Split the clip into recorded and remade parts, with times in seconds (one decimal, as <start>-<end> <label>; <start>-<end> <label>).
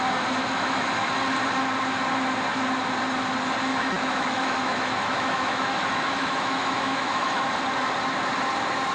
0.0-0.4 recorded; 0.4-1.1 remade; 1.1-3.7 recorded; 3.7-7.4 remade; 7.4-8.9 recorded